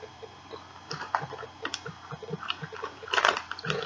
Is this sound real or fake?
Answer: fake